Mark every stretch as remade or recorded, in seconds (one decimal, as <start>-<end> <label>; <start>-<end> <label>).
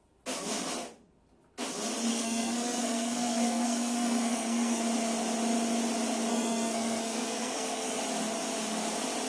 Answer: 0.0-2.1 recorded; 2.1-4.8 remade; 4.8-6.3 recorded; 6.3-8.0 remade; 8.0-9.3 recorded